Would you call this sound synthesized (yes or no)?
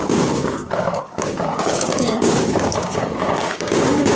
yes